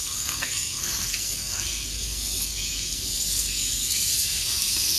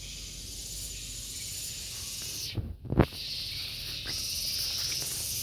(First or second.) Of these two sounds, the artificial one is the first